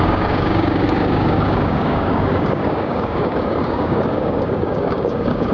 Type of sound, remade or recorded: remade